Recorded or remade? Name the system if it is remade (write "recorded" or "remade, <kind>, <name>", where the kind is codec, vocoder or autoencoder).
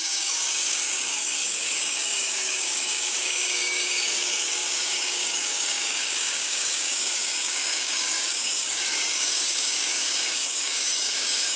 remade, codec, DAC